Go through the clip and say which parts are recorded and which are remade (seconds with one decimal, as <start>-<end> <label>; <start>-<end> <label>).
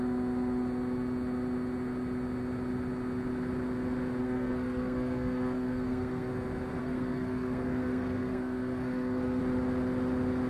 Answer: 0.0-4.2 recorded; 4.2-6.3 remade; 6.3-6.8 recorded; 6.8-9.4 remade; 9.4-10.5 recorded